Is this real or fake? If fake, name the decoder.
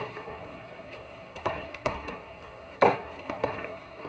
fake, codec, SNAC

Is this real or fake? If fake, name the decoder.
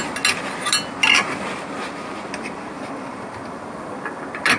real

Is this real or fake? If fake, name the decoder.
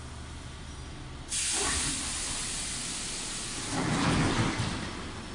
real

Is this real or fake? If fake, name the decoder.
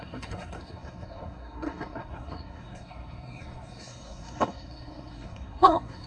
fake, codec, SNAC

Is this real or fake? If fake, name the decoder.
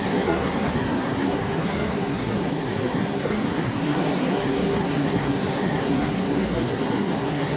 fake, codec, SNAC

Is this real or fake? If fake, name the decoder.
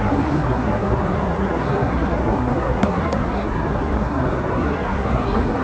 fake, codec, SNAC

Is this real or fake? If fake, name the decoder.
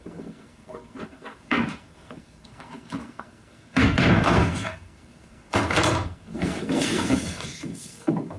fake, codec, SNAC